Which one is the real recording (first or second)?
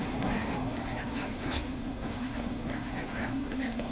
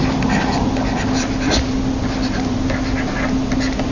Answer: second